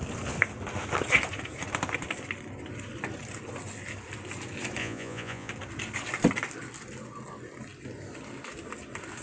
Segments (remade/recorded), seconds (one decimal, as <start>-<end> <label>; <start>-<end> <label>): 0.0-4.8 recorded; 4.8-5.5 remade; 5.5-9.2 recorded